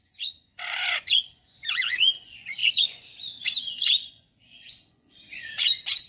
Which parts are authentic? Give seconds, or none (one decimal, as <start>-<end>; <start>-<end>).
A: none